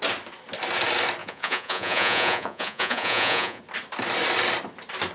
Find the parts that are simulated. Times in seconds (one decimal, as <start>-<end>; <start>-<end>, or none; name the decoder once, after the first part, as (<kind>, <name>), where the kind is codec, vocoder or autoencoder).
1.2-3.6 (vocoder, Vocos)